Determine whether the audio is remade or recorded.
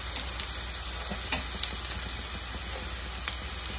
recorded